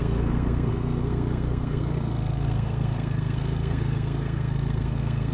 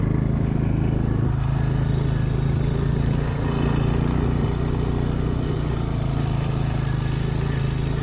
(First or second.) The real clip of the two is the second